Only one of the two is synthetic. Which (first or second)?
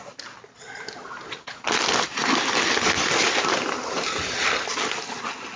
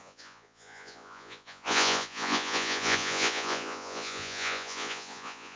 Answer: second